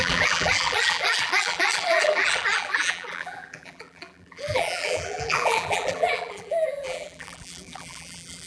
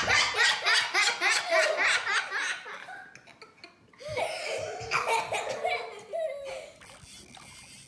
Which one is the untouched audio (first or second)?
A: second